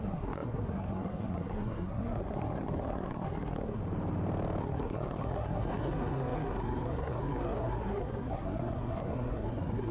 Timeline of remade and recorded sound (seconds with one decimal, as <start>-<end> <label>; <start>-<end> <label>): 0.0-3.8 remade; 3.8-4.6 recorded; 4.6-9.9 remade